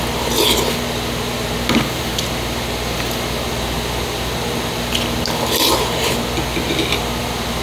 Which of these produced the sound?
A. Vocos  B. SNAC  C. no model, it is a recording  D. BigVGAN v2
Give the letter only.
C